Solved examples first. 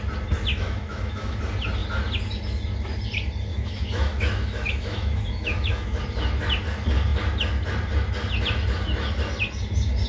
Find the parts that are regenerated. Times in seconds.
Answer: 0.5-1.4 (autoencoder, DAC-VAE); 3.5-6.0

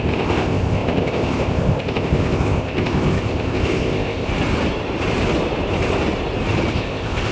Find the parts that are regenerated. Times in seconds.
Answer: 0.0-4.3 (codec, ZipCodec); 6.7-7.3

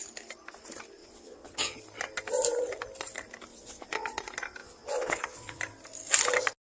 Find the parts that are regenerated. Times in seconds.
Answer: 1.0-1.8 (vocoder, Vocos); 3.5-4.1; 4.6-5.6

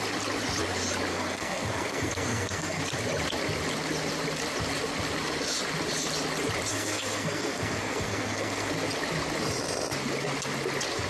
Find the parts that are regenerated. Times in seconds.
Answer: 1.1-2.8 (codec, SNAC); 6.7-8.7